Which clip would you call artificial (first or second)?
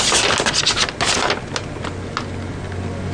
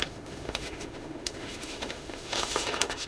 second